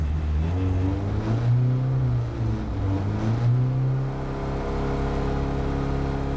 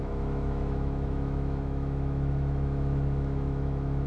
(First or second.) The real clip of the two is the first